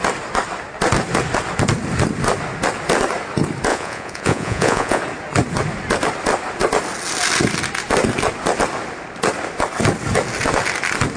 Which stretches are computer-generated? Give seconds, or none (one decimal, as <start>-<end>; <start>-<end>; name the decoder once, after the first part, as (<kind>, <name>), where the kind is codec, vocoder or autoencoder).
3.7-5.0 (vocoder, Vocos)